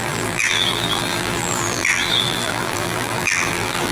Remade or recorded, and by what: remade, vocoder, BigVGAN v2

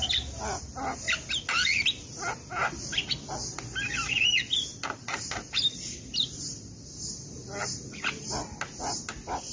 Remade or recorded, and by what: recorded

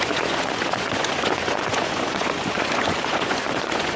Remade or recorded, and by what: remade, vocoder, Vocos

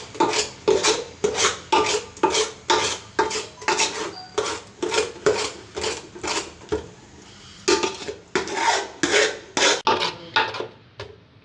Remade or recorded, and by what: recorded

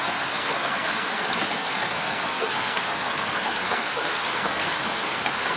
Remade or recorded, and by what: remade, codec, SNAC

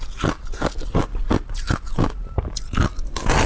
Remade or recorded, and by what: recorded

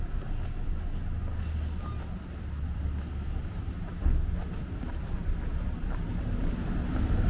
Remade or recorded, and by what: recorded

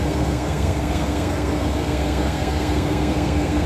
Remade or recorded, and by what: remade, codec, SNAC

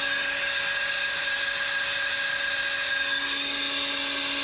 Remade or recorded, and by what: recorded